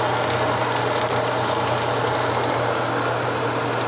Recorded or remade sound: recorded